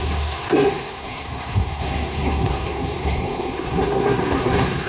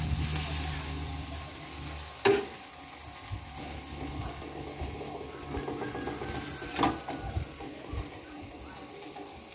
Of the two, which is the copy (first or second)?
first